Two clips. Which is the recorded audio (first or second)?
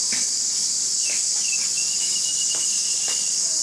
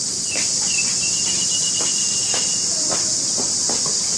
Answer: second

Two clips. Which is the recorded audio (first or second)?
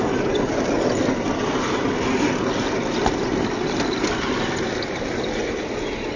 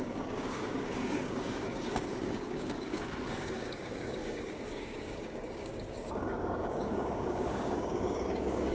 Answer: first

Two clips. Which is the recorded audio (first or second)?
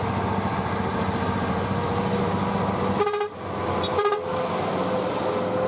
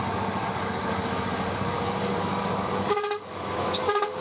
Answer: first